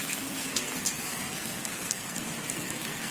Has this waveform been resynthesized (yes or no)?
yes